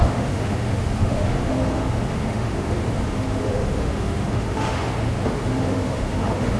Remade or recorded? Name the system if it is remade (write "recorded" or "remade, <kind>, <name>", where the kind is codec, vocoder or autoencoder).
remade, autoencoder, DAC-VAE